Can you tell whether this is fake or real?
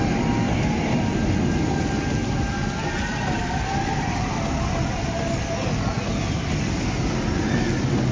real